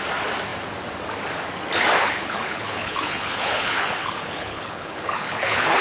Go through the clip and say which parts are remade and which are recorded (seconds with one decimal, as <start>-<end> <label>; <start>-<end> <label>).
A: 0.0-2.0 recorded; 2.0-5.8 remade